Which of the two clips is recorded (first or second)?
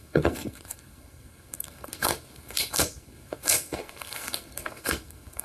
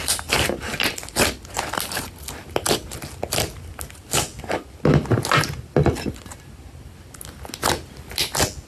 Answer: second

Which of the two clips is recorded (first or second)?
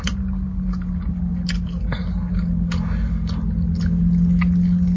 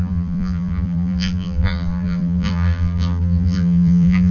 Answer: first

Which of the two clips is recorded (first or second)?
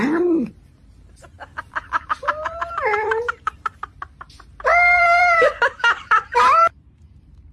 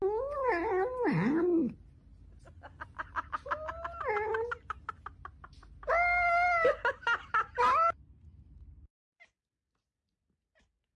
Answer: second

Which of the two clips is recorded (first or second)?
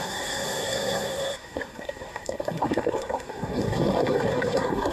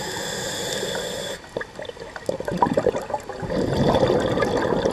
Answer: second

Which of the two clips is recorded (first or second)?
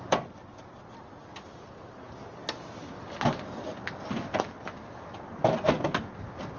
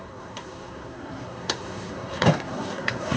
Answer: first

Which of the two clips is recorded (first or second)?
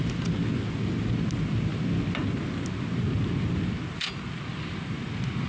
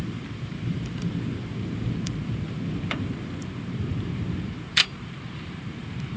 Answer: first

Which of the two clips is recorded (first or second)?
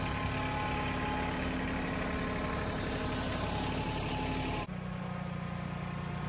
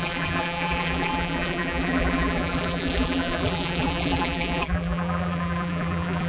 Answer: first